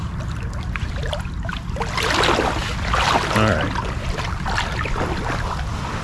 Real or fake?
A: real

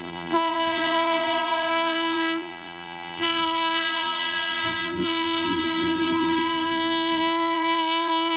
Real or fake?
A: fake